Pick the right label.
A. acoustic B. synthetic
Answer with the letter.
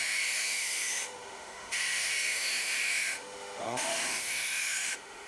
B